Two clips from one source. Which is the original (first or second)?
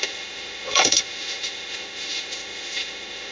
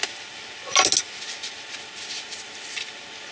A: second